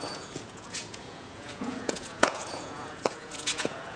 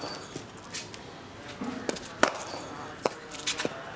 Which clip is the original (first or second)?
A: second